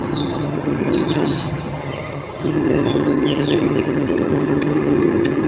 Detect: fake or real fake